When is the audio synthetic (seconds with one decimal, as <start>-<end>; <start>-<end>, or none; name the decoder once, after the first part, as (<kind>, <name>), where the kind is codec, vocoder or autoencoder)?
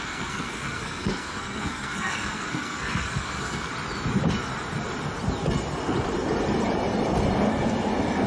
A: 0.0-3.7 (codec, SNAC)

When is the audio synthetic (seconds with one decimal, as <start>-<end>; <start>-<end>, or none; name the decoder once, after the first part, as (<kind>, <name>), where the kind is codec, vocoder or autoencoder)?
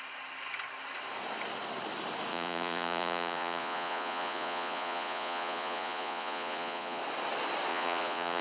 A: 2.3-7.0 (vocoder, Vocos); 7.7-8.4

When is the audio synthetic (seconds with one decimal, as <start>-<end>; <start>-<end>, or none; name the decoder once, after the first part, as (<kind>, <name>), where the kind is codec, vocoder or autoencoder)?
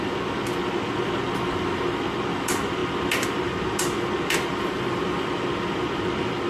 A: none